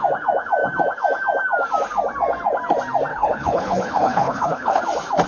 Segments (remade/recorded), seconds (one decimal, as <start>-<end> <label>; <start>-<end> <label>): 0.0-3.1 recorded; 3.1-4.8 remade; 4.8-5.3 recorded